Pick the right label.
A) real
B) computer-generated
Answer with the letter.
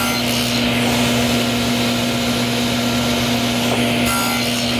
A